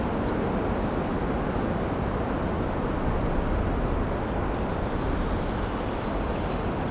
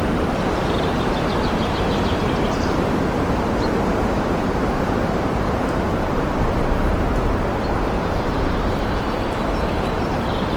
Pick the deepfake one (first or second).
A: second